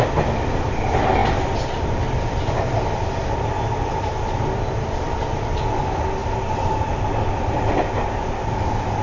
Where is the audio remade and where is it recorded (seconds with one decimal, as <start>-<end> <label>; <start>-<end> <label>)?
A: 0.0-9.0 recorded